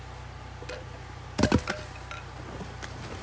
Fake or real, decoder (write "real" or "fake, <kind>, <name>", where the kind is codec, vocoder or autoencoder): real